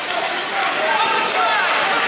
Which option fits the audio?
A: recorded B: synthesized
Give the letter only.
A